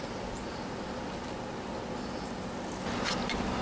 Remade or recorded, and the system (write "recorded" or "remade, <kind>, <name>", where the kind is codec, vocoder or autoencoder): recorded